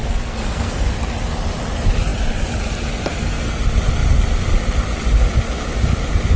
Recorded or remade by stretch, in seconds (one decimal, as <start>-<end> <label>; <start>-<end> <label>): 0.0-0.9 remade; 0.9-3.0 recorded; 3.0-3.6 remade; 3.6-6.4 recorded